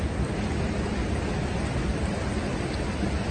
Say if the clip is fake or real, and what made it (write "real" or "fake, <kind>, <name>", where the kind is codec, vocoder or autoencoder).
real